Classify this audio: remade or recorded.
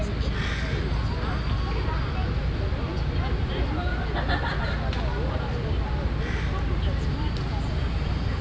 recorded